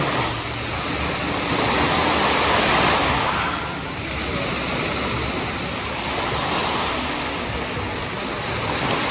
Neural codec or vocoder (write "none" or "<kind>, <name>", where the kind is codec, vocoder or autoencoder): none